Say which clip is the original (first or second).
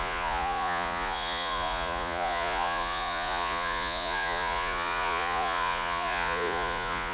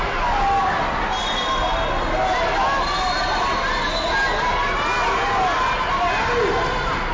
second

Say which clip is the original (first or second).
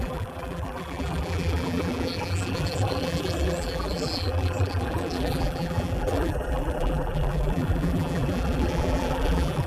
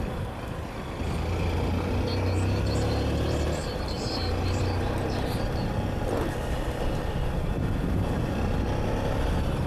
second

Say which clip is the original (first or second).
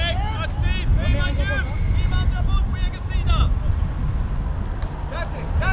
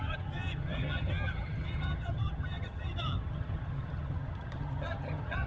first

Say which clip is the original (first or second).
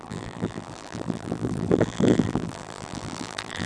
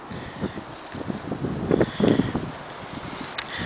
second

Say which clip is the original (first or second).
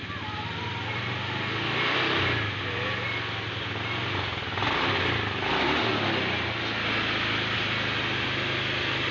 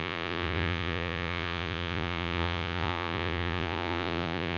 first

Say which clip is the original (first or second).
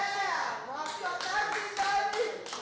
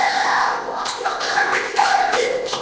first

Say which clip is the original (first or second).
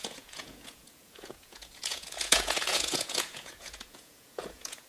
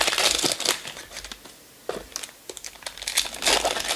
second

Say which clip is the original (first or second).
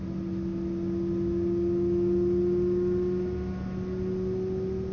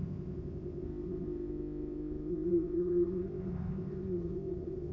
first